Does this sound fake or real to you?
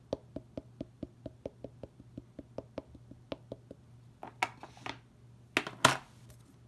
real